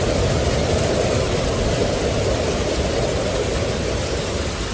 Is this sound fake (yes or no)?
no